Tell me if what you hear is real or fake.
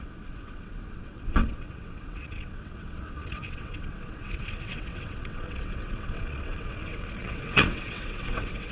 fake